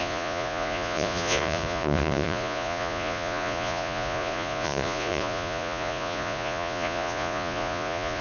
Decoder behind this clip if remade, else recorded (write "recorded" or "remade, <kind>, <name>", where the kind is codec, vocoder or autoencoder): remade, vocoder, Vocos